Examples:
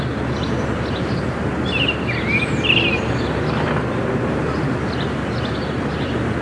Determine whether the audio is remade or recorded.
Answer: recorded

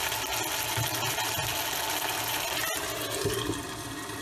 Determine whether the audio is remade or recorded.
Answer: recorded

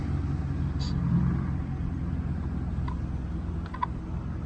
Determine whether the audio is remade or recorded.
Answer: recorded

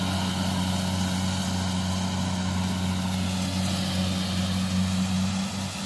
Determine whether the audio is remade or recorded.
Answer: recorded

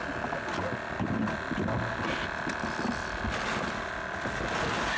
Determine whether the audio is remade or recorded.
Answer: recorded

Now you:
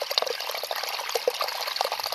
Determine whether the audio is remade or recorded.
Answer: recorded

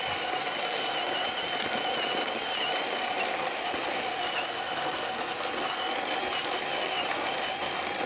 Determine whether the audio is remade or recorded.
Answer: recorded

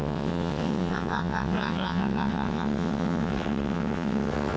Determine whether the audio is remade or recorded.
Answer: remade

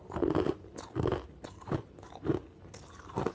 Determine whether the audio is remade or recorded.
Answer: recorded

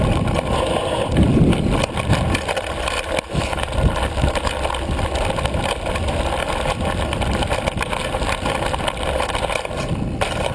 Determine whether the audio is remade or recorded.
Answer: recorded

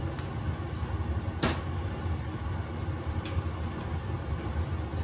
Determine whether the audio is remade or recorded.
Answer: recorded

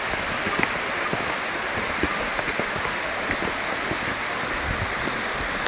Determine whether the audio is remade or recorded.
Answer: recorded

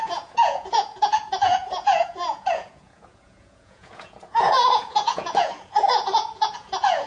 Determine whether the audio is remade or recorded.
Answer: remade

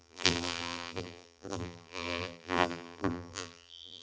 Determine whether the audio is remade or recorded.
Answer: remade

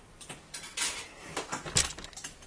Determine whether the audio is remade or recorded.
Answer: recorded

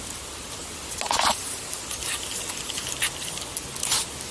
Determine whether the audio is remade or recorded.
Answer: recorded